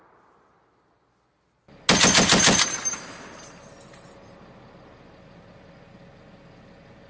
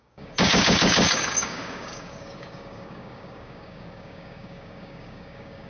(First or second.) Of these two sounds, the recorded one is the first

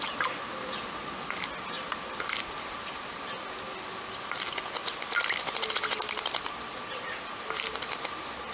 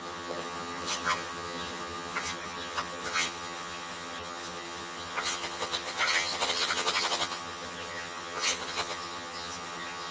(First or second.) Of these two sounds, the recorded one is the first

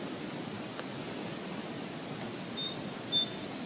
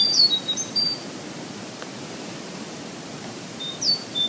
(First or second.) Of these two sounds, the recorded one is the first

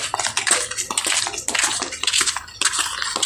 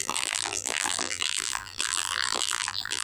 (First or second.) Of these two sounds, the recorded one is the first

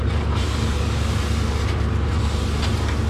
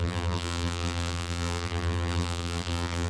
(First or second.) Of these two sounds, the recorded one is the first